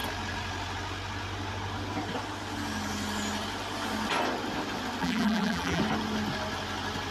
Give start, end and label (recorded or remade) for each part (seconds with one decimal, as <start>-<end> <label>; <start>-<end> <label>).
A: 0.0-5.0 recorded; 5.0-5.8 remade; 5.8-7.1 recorded